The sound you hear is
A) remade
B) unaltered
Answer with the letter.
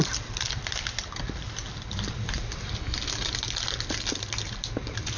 A